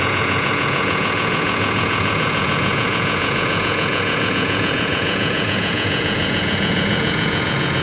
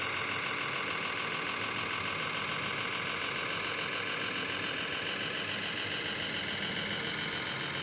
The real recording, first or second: second